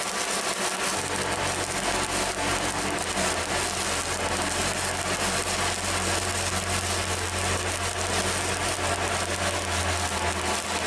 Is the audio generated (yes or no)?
no